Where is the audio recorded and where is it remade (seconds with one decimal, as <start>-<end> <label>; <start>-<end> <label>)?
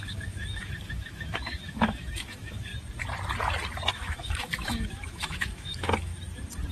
0.0-2.7 remade; 2.7-3.9 recorded; 3.9-6.1 remade; 6.1-6.7 recorded